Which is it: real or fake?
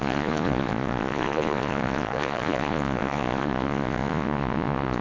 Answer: fake